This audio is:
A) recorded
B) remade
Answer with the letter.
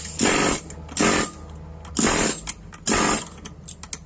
A